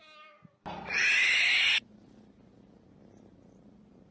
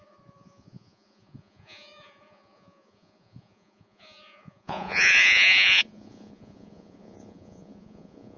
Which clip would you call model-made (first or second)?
second